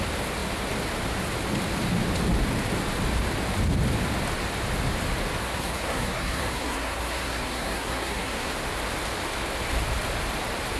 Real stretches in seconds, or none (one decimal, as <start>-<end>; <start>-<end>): 0.0-5.4; 8.5-10.8